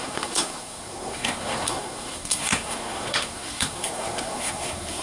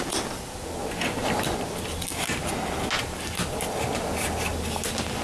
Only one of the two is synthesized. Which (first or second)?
first